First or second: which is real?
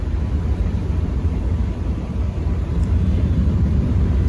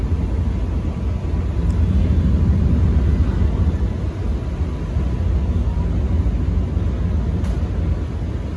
second